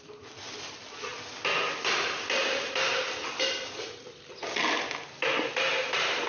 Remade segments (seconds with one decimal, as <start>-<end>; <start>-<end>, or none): none